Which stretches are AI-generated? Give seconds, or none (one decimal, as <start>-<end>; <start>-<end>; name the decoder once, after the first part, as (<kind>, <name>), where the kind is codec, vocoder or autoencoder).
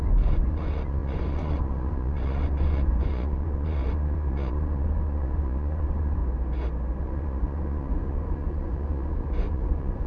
0.0-6.2 (vocoder, Vocos); 7.0-10.1